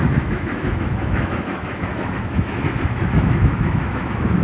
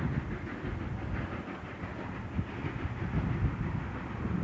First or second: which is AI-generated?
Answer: first